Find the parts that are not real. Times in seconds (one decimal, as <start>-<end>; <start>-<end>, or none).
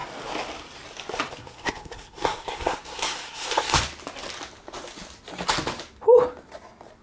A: 1.4-3.8